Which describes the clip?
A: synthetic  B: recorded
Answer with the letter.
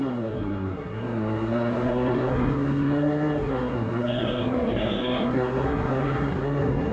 A